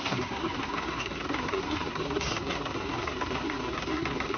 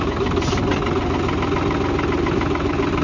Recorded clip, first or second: second